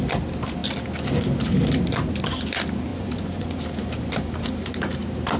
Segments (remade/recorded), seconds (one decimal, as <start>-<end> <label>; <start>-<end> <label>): 0.0-2.9 recorded; 2.9-3.6 remade; 3.6-5.4 recorded